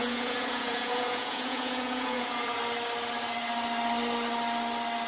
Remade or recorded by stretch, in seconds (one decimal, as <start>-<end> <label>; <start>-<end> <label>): 0.0-2.6 remade; 2.6-5.1 recorded